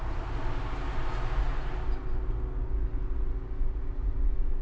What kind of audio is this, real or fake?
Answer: real